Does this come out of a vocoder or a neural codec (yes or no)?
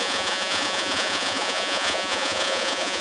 yes